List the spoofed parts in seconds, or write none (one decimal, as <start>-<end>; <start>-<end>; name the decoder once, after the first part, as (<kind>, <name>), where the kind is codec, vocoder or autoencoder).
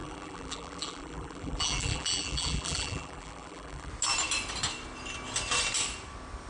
0.0-3.9 (vocoder, BigVGAN v2)